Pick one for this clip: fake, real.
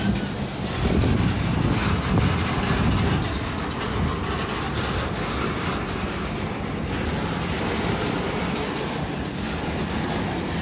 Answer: real